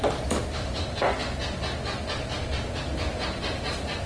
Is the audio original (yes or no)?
yes